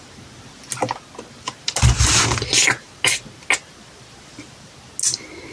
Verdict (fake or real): real